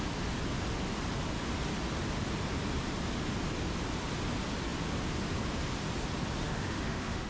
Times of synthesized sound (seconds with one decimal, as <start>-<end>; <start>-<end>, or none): 6.4-7.3